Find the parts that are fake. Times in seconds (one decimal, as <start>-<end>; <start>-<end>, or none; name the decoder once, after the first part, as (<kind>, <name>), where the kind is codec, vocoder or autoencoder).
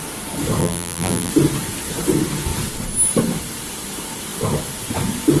0.6-1.3 (vocoder, BigVGAN v2)